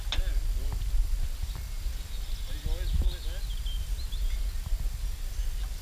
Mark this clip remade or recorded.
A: recorded